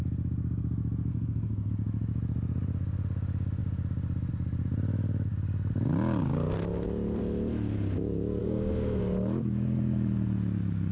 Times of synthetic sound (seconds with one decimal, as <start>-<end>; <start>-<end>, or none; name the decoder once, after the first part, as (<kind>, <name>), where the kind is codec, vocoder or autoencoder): 1.1-1.7 (codec, SNAC); 8.4-9.0